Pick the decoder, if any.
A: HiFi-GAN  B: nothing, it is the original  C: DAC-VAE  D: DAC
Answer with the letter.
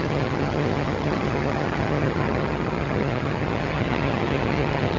A